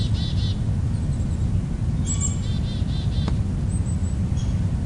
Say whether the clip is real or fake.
real